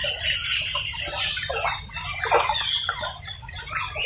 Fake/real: real